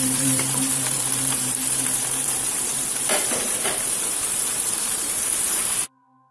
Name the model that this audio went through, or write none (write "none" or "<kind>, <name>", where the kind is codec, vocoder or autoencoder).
vocoder, BigVGAN v2